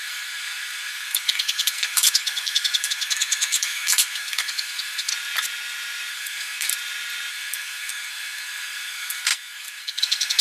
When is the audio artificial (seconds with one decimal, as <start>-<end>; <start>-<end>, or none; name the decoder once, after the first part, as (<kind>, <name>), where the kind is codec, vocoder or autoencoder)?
0.0-5.1 (codec, SNAC); 6.1-6.7; 7.3-10.4